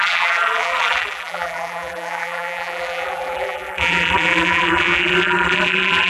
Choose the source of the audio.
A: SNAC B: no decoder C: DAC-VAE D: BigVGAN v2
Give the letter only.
D